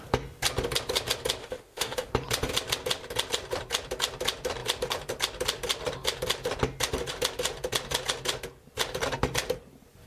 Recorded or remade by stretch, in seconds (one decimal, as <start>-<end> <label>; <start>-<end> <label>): 0.0-1.4 recorded; 1.4-2.1 remade; 2.1-10.1 recorded